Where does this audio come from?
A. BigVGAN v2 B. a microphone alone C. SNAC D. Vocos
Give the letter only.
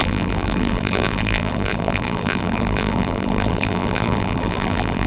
A